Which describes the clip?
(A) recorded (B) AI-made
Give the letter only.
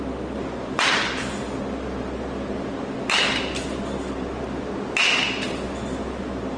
A